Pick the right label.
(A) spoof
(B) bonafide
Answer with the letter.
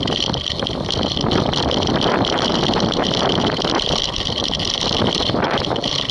B